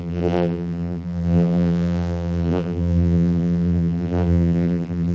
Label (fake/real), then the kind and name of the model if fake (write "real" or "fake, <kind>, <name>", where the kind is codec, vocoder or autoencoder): fake, vocoder, BigVGAN v2